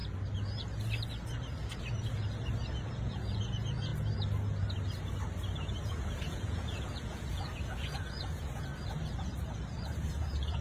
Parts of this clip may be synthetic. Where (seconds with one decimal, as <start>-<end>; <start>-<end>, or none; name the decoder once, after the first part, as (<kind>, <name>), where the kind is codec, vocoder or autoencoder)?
3.0-3.9 (vocoder, Vocos); 5.7-8.7; 10.1-10.6